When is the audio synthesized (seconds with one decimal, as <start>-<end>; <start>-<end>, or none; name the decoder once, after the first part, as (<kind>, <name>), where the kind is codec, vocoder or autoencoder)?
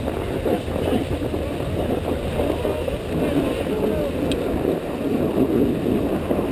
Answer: none